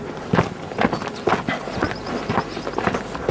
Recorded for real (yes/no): yes